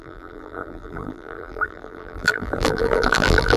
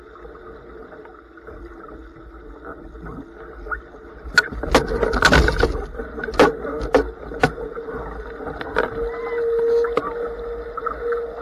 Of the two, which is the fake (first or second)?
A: first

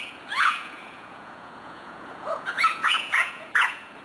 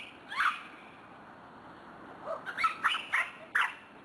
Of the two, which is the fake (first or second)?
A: first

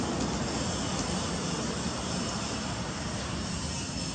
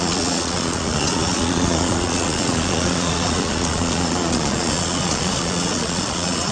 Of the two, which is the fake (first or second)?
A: second